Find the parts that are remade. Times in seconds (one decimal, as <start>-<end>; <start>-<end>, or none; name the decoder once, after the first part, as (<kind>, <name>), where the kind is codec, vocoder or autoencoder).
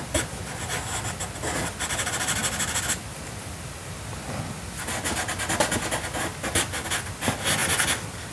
none